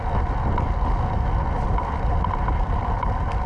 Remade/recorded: recorded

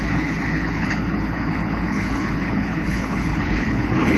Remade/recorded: remade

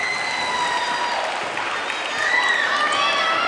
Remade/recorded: recorded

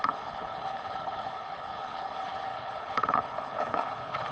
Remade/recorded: remade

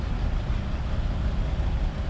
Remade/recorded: recorded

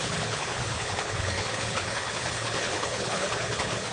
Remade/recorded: remade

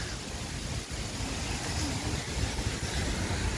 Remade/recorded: recorded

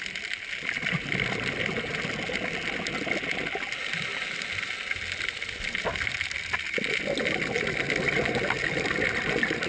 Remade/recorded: recorded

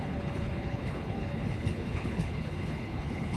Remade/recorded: remade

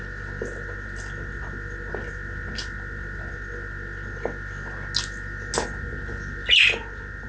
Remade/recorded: recorded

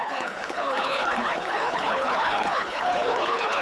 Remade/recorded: remade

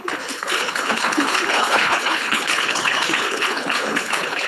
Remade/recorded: remade